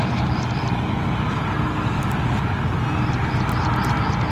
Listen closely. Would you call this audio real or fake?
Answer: real